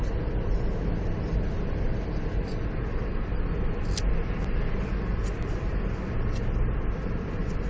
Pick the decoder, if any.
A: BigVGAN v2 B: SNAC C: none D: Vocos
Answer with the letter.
C